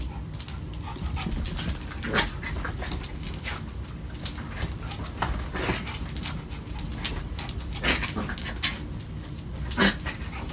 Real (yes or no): yes